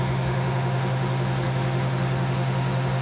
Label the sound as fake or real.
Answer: fake